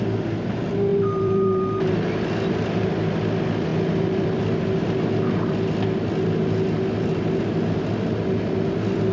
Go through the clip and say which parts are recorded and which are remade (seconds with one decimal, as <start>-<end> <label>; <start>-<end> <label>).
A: 0.0-0.9 recorded; 0.9-2.3 remade; 2.3-3.7 recorded; 3.7-4.4 remade; 4.4-9.1 recorded